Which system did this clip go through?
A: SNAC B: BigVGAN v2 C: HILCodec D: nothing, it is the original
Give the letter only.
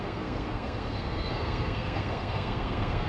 A